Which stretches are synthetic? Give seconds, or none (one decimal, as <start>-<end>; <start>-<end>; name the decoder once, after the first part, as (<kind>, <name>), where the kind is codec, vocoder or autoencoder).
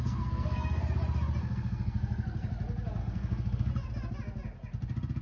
0.0-0.8 (codec, SNAC); 1.4-2.5; 3.0-3.7